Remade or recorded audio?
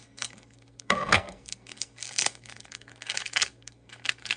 remade